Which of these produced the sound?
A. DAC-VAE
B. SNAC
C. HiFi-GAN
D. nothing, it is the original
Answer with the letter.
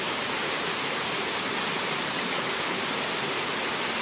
D